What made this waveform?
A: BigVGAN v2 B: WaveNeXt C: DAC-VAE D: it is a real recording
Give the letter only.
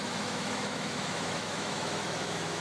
C